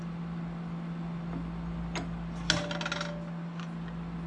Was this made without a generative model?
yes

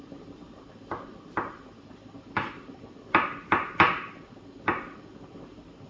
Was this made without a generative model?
yes